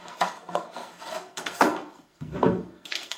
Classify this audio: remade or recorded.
remade